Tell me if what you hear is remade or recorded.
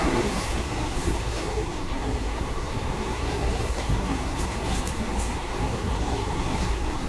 remade